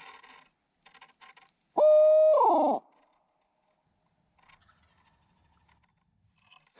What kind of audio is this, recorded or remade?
recorded